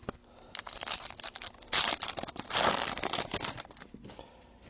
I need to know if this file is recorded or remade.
recorded